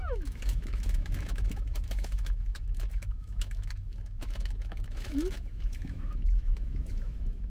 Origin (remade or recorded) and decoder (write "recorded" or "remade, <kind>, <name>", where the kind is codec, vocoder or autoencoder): remade, autoencoder, DAC-VAE